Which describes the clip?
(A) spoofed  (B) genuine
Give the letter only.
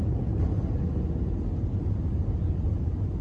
B